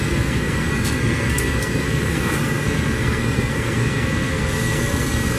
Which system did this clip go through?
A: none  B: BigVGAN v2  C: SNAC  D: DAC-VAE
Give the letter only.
C